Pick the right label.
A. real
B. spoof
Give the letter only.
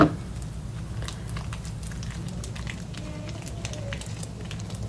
A